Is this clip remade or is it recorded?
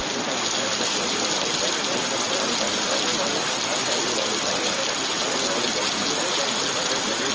recorded